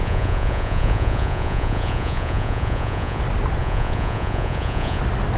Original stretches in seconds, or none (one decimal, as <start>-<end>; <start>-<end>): 3.2-3.6; 5.0-5.4